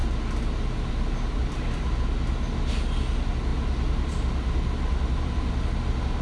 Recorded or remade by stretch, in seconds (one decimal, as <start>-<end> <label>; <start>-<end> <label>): 0.0-6.2 recorded